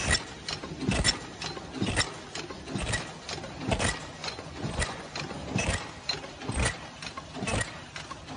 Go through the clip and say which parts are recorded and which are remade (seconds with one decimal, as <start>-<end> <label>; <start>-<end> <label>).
0.0-4.2 recorded; 4.2-5.1 remade; 5.1-8.4 recorded